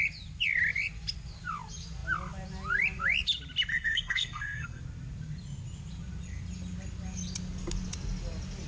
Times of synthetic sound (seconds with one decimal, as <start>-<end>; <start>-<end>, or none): 3.7-4.8